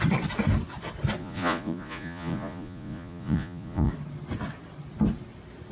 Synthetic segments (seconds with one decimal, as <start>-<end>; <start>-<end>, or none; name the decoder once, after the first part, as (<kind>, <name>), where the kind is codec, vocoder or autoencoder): 1.2-3.9 (vocoder, Vocos)